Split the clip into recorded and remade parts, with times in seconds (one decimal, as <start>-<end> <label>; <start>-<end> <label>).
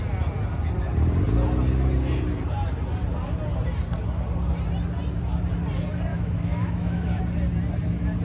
0.0-6.1 recorded; 6.1-7.2 remade; 7.2-8.2 recorded